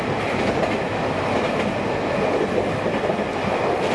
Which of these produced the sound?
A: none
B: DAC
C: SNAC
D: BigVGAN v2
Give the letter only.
A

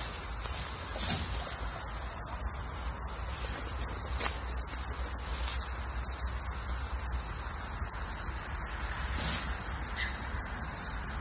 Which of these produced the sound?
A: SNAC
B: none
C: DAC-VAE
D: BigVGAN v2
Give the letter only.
B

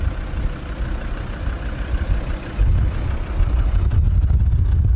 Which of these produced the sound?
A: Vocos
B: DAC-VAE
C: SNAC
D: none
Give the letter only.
D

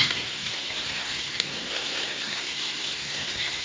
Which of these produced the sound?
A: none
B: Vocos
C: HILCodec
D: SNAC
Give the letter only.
D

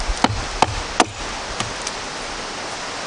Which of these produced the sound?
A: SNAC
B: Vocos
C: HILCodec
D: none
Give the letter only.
D